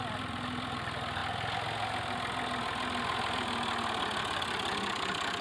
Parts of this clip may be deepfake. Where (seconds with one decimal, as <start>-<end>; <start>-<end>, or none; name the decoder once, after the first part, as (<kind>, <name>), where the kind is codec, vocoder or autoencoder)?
none